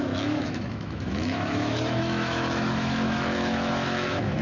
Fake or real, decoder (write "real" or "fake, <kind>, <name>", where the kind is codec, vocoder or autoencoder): fake, autoencoder, DAC-VAE